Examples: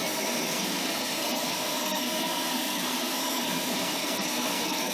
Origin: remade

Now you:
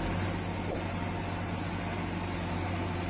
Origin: recorded